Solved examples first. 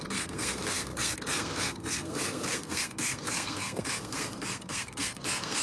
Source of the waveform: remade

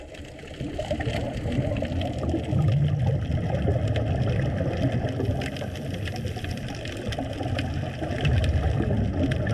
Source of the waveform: recorded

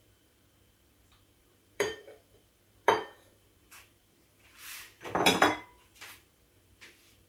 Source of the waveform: remade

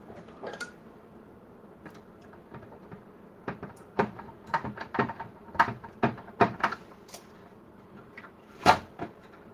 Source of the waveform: remade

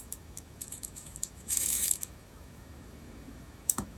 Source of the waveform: remade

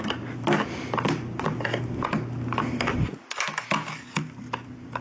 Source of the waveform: recorded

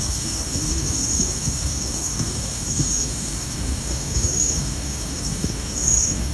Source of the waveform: remade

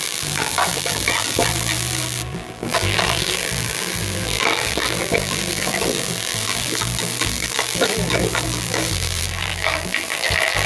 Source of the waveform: remade